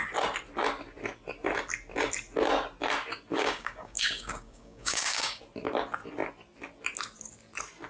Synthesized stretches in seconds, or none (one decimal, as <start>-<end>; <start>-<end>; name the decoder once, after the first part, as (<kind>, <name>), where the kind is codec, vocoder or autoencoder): 3.3-5.4 (codec, DAC)

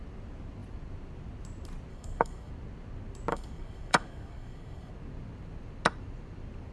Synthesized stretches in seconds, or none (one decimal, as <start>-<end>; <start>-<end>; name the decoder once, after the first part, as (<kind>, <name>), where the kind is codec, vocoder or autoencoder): 1.9-2.5 (codec, DAC); 3.3-4.9

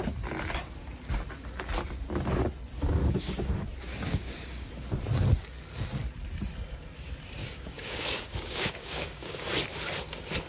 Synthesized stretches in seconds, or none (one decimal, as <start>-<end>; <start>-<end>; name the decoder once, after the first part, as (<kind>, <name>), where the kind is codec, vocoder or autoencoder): 3.0-3.5 (codec, DAC); 3.9-4.7; 7.4-9.4

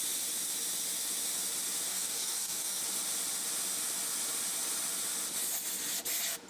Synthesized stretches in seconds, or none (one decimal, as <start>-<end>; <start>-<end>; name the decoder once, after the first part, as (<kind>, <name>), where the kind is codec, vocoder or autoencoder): 1.9-2.8 (codec, DAC)

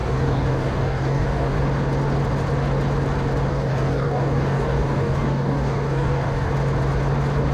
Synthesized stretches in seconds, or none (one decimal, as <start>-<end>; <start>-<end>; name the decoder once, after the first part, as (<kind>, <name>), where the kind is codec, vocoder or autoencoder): 0.0-1.6 (codec, DAC); 3.5-6.5

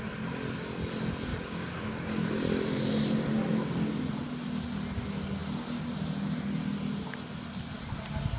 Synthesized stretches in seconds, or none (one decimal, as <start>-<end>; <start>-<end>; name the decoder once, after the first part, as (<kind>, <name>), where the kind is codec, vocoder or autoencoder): 1.3-2.3 (codec, DAC)

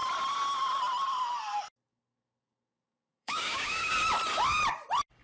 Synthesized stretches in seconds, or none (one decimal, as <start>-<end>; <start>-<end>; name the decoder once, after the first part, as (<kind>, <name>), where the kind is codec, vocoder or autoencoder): 1.9-3.9 (codec, DAC)